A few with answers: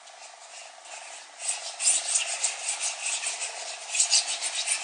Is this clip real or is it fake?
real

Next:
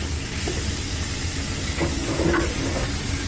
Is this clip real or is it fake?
real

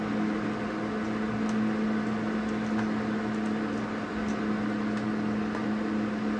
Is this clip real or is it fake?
real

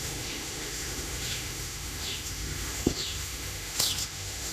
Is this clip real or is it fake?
fake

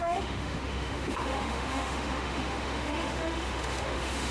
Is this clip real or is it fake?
fake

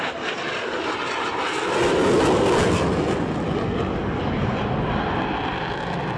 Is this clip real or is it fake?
real